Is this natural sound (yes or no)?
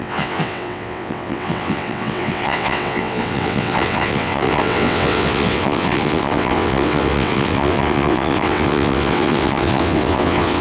no